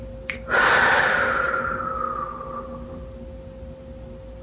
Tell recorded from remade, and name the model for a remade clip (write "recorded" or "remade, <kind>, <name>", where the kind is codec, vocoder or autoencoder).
recorded